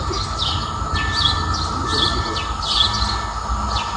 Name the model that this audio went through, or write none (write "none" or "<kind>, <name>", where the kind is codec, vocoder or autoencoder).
none